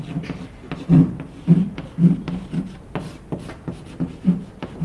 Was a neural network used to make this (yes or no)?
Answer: no